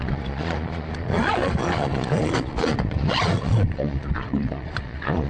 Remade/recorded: remade